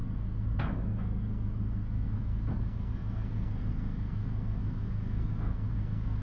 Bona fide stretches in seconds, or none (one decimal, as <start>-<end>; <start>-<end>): none